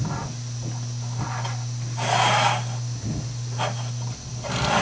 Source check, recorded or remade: recorded